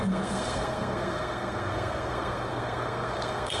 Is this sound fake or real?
fake